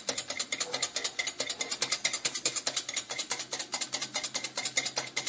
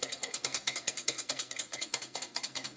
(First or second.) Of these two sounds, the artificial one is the second